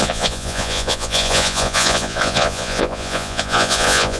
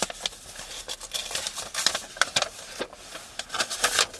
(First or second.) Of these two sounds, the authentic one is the second